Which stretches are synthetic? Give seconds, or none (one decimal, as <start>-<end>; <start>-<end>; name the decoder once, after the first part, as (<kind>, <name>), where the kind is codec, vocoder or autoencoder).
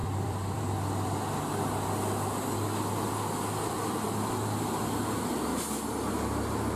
0.0-0.6 (vocoder, BigVGAN v2)